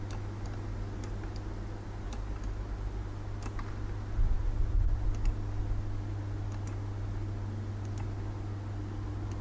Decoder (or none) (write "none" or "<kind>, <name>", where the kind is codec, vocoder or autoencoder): none